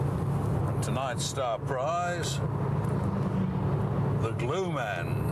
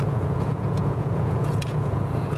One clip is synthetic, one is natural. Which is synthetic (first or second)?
second